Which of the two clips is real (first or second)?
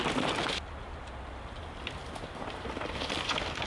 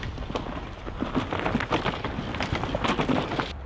second